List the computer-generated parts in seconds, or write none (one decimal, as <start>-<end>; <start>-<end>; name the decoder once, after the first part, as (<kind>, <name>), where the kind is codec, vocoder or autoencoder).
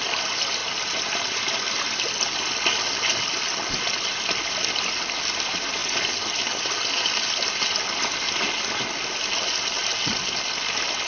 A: none